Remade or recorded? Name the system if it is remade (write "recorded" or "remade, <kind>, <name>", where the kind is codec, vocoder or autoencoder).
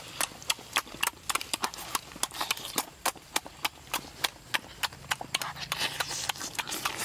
recorded